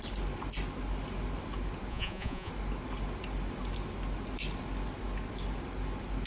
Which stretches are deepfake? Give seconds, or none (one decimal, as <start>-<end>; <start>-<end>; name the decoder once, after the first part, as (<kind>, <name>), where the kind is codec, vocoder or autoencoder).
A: 1.9-2.5 (vocoder, Vocos)